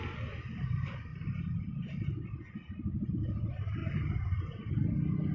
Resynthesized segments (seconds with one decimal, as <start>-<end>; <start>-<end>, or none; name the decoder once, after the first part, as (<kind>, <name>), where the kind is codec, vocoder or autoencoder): none